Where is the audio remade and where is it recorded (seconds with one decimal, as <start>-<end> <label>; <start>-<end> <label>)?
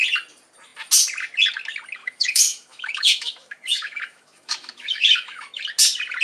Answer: 0.0-2.0 recorded; 2.0-5.6 remade; 5.6-6.2 recorded